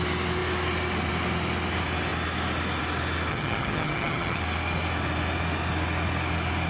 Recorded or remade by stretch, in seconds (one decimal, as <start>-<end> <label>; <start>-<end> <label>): 0.0-3.3 recorded; 3.3-4.4 remade; 4.4-6.7 recorded